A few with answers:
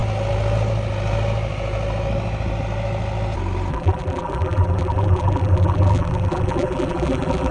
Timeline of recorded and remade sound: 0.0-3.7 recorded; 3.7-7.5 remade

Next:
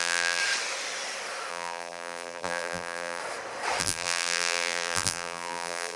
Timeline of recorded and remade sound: 0.0-0.4 remade; 0.4-1.5 recorded; 1.5-3.2 remade; 3.2-3.8 recorded; 3.8-6.0 remade